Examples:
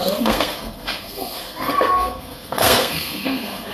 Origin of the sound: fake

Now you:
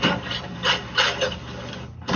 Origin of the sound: real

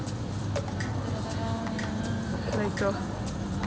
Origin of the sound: real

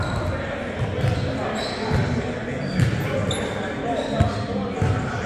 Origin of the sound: real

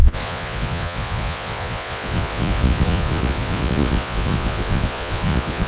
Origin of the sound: fake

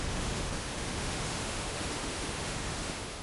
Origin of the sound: fake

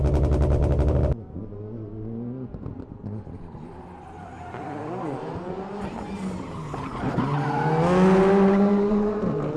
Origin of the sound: real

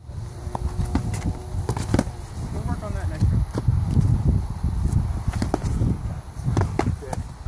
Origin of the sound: real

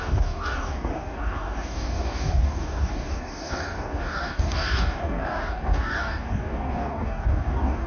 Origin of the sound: fake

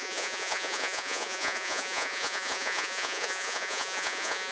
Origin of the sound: fake